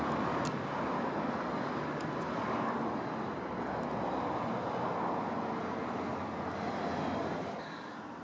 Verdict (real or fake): real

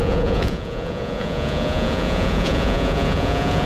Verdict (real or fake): fake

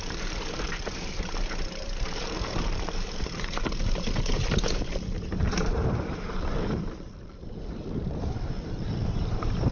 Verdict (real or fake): fake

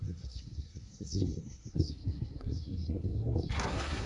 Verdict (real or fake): fake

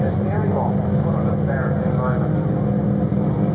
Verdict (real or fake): real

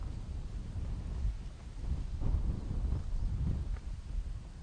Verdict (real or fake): real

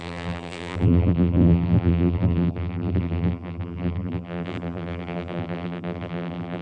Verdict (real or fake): fake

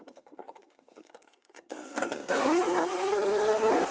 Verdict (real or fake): fake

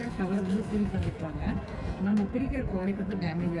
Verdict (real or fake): fake